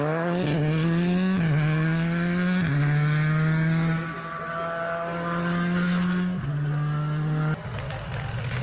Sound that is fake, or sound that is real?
real